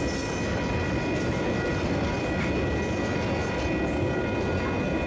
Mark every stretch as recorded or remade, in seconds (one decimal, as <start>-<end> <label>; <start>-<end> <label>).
0.0-5.1 recorded